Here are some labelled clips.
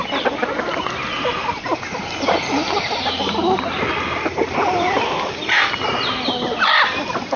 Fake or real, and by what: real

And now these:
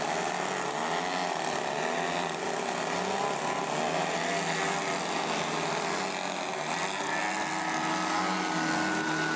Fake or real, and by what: real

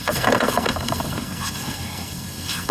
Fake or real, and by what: fake, codec, SNAC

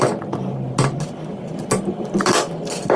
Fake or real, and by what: real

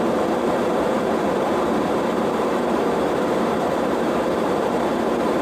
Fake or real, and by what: fake, vocoder, BigVGAN v2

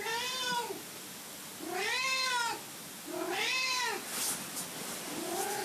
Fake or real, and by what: real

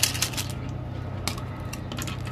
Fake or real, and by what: real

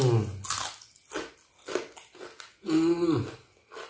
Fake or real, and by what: real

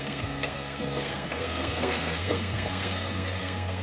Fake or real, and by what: fake, codec, SNAC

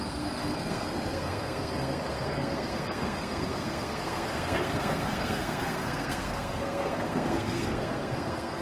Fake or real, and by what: fake, codec, SNAC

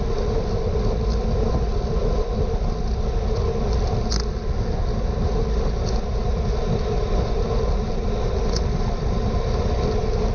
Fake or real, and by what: real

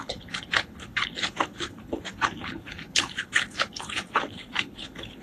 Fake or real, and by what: fake, codec, HILCodec